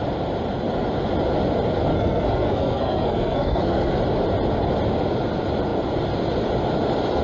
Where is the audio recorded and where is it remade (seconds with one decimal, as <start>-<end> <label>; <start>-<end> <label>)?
0.0-1.9 recorded; 1.9-4.0 remade; 4.0-7.2 recorded